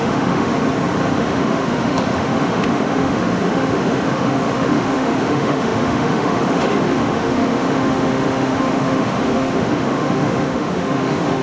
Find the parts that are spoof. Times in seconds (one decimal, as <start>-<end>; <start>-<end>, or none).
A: 0.0-0.5; 1.2-11.4